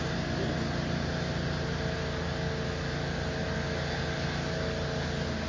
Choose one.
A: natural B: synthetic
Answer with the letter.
A